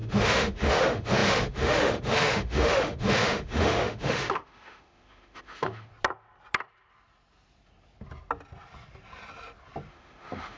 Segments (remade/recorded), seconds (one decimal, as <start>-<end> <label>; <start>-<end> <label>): 0.0-5.9 remade; 5.9-9.9 recorded; 9.9-10.6 remade